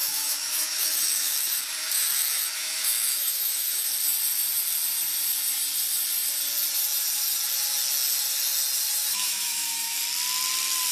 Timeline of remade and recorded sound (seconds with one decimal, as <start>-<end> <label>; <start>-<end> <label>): 0.0-3.9 remade; 3.9-9.1 recorded; 9.1-10.0 remade; 10.0-10.9 recorded